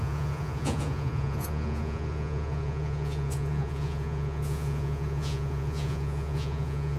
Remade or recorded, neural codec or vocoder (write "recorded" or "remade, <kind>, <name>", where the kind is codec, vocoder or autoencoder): remade, vocoder, Vocos